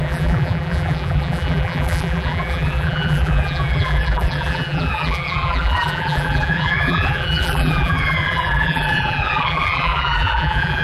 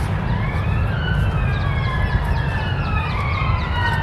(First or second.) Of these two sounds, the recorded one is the second